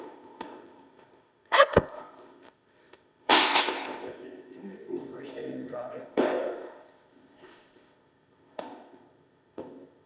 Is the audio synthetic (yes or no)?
yes